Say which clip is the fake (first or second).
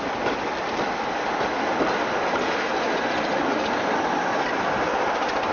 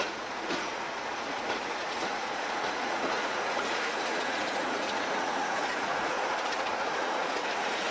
second